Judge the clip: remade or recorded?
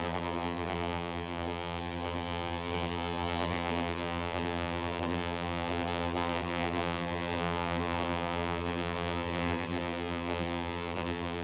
remade